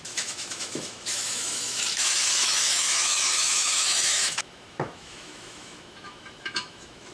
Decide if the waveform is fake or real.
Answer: fake